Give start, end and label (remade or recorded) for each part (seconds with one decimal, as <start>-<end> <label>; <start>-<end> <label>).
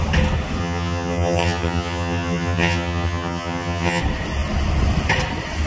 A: 0.0-0.6 recorded; 0.6-4.0 remade; 4.0-5.7 recorded